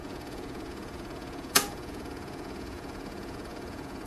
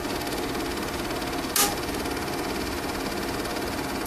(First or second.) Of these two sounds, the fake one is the first